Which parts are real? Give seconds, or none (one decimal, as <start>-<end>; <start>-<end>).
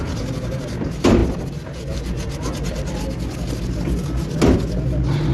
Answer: 0.0-5.3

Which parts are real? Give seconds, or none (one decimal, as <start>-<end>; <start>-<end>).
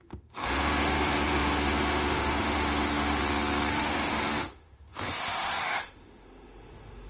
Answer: 3.2-3.7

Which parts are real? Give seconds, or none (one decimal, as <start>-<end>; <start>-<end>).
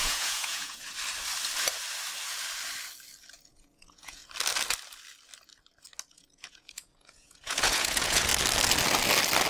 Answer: 0.9-3.5; 4.2-6.1; 8.3-9.5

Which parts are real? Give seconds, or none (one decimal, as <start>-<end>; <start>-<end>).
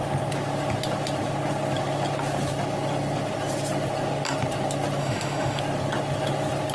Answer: 0.0-5.0; 5.6-6.7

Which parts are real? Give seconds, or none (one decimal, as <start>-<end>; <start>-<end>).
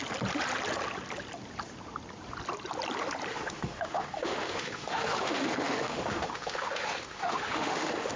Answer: 0.0-3.3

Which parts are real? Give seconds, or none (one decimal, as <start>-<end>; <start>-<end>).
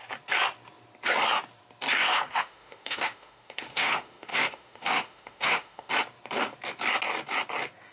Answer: 0.0-2.0; 5.9-7.9